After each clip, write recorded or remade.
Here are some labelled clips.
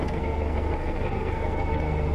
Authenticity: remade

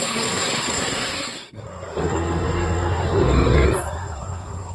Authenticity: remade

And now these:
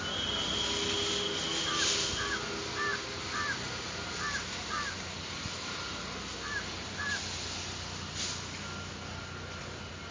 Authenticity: recorded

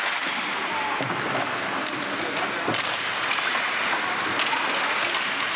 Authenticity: recorded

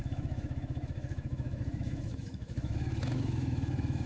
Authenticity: remade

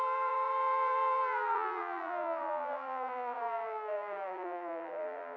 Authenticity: remade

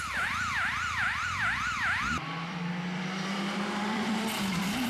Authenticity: remade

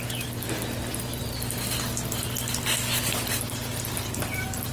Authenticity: recorded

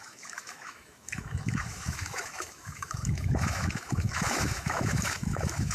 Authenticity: remade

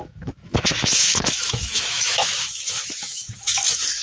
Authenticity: remade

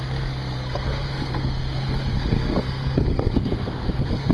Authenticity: remade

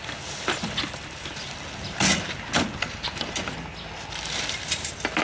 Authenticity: recorded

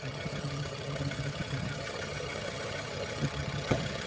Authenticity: remade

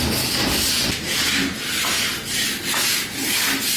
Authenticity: recorded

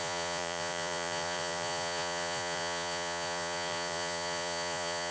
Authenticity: remade